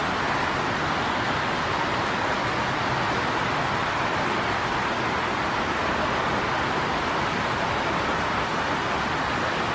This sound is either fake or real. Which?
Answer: real